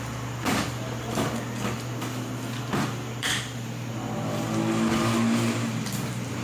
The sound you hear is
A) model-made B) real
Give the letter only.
A